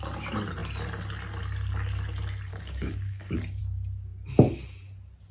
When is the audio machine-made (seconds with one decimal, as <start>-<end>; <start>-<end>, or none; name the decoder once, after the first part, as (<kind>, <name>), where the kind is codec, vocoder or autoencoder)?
2.5-3.6 (codec, DAC)